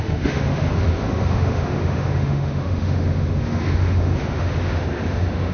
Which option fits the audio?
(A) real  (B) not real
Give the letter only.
B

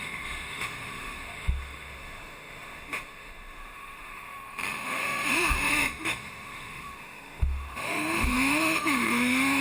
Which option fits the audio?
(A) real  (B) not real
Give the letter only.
B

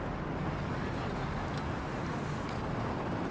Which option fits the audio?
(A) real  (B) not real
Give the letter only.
A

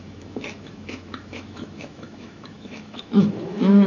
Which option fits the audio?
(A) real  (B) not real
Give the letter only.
B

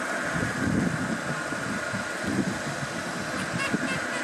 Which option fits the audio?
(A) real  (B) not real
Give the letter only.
A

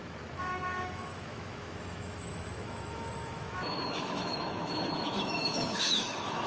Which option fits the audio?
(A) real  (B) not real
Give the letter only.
B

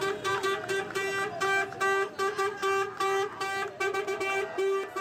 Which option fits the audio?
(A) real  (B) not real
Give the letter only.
A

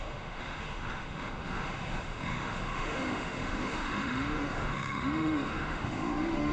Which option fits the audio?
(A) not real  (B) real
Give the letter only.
A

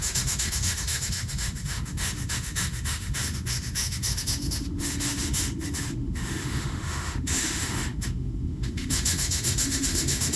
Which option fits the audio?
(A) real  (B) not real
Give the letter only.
B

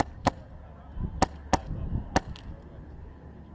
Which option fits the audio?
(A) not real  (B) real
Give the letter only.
B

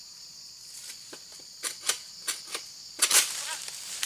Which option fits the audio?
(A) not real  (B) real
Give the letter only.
B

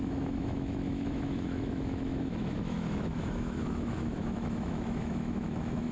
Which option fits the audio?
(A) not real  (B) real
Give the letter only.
A